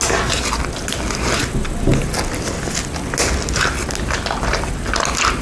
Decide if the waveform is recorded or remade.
recorded